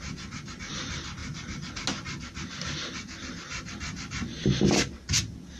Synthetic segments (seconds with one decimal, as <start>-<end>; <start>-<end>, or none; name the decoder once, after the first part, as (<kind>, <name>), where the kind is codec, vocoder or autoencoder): none